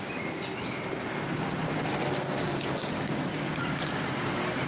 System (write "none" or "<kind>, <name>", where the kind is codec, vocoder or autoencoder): none